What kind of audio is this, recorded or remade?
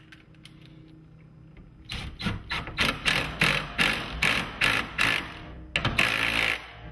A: recorded